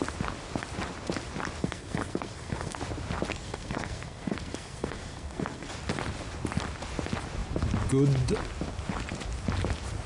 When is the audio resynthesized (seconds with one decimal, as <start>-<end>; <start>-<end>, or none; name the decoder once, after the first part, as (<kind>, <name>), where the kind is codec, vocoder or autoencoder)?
1.6-2.8 (codec, SNAC); 3.3-5.7